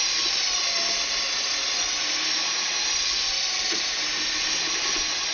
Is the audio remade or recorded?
recorded